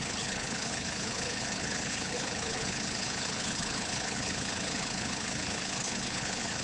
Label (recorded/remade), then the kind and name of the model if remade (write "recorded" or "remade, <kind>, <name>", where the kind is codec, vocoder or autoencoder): remade, codec, HILCodec